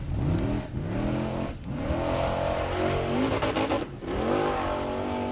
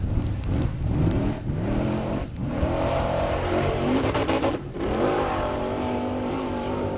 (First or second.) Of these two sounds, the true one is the first